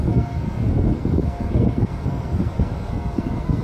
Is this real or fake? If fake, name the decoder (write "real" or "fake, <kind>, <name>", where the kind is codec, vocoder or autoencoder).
fake, codec, SNAC